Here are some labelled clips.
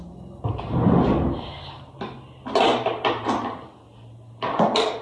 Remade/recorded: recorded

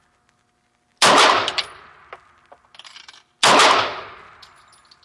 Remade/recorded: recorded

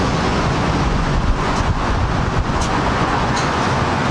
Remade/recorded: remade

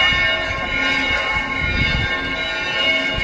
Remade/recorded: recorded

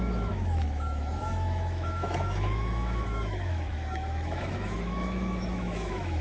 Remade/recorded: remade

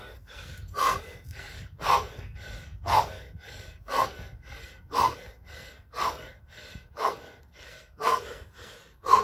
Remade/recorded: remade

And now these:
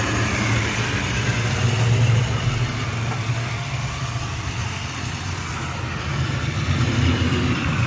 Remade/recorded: recorded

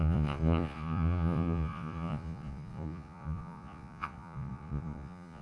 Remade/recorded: remade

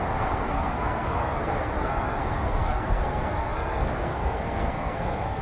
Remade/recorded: remade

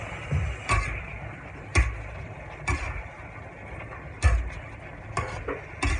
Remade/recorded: recorded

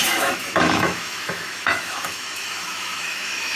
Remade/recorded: remade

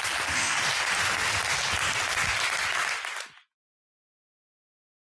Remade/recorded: recorded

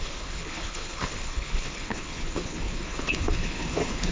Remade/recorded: remade